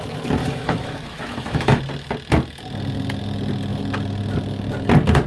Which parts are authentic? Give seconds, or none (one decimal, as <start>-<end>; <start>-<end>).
0.0-0.4; 1.8-5.3